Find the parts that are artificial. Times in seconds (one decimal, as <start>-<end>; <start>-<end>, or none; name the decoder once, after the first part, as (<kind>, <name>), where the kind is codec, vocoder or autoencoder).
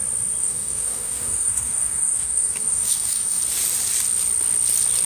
0.4-3.4 (codec, DAC)